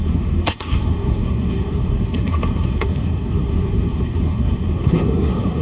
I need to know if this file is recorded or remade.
remade